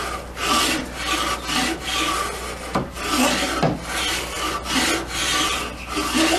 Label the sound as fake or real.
real